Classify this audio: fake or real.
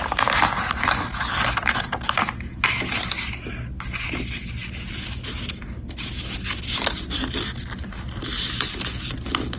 real